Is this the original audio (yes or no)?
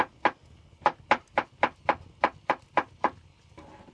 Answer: yes